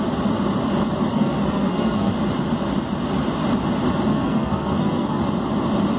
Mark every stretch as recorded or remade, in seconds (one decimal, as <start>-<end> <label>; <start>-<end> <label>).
0.0-1.1 recorded; 1.1-2.1 remade; 2.1-4.1 recorded; 4.1-5.2 remade; 5.2-6.0 recorded